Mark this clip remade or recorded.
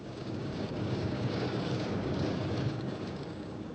remade